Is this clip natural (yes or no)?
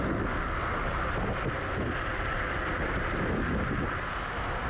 yes